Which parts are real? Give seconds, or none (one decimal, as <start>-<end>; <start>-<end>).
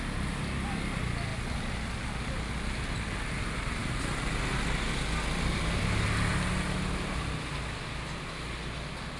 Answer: 0.0-9.2